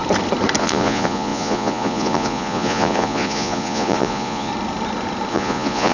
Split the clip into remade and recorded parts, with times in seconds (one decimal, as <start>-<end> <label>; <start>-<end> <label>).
0.0-0.6 recorded; 0.6-4.5 remade; 4.5-5.3 recorded; 5.3-5.9 remade